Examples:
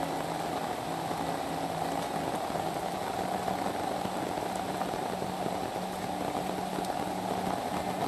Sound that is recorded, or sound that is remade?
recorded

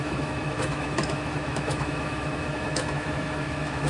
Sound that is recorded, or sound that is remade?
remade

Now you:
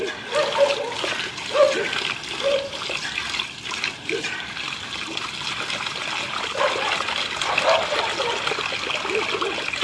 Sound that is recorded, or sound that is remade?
recorded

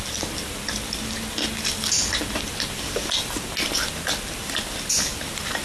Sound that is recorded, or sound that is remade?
recorded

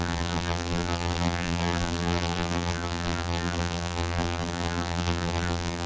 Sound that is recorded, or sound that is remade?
remade